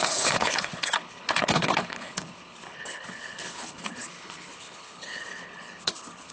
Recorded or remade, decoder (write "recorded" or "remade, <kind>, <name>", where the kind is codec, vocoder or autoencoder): remade, codec, HILCodec